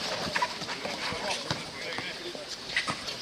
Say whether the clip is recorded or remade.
recorded